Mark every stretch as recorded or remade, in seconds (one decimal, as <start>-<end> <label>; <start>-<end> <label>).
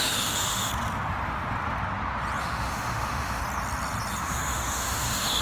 0.0-0.7 remade; 0.7-2.4 recorded; 2.4-3.4 remade; 3.4-4.2 recorded; 4.2-5.4 remade